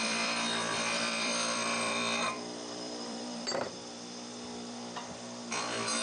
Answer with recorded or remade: remade